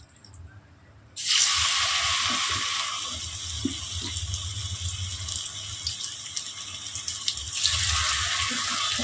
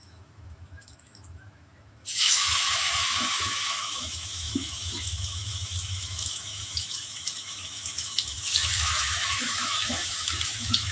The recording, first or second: first